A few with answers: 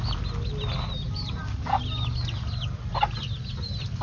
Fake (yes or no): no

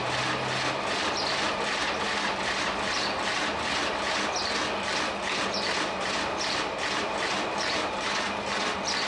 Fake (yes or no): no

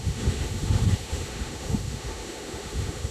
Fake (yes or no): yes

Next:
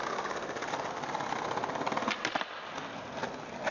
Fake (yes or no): no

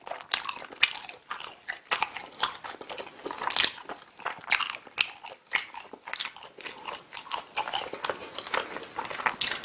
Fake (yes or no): no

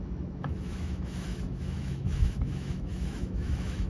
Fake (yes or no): yes